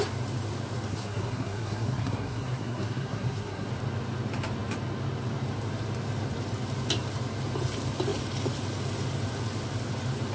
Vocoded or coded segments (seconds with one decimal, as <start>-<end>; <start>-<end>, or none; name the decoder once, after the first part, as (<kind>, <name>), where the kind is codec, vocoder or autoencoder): 0.9-3.7 (codec, SNAC)

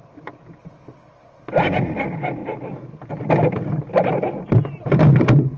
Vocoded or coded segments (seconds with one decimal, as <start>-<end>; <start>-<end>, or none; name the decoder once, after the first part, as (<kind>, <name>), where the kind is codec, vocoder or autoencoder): 0.0-2.4 (vocoder, BigVGAN v2); 4.5-5.6

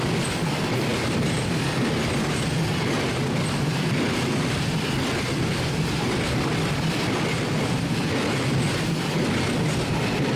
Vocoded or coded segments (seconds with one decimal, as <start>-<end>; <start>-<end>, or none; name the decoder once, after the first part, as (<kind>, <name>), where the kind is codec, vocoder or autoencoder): none

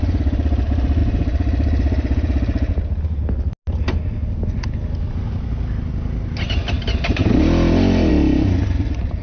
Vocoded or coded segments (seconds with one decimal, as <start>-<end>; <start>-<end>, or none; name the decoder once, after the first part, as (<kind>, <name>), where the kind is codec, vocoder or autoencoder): none

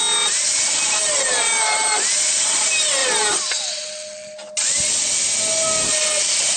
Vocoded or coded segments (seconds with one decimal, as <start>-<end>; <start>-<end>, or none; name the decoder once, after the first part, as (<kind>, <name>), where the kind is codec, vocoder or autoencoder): none